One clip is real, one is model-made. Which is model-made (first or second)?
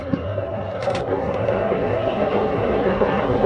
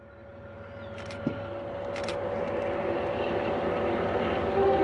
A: first